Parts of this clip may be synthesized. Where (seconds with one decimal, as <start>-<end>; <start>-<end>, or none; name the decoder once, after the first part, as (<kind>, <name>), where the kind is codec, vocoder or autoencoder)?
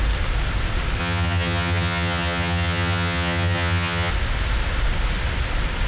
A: 1.0-4.1 (vocoder, HiFi-GAN)